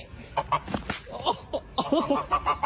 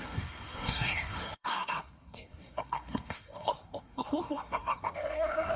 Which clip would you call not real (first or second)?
second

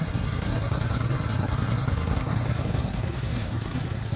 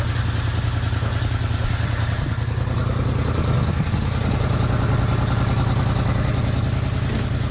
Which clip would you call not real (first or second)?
first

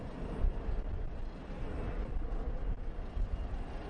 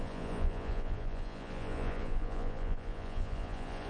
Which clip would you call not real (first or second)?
second